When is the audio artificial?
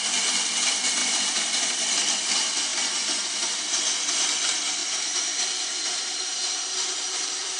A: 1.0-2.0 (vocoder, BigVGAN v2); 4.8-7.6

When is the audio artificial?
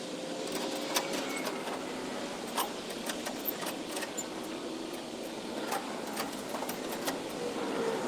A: none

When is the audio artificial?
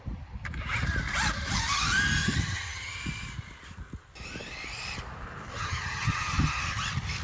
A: 2.2-3.0 (vocoder, HiFi-GAN); 5.5-6.6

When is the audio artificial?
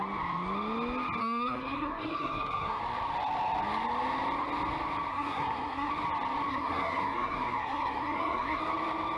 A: 1.2-2.8 (codec, SNAC); 5.1-5.9; 6.5-8.6